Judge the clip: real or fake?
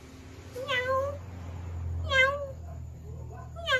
real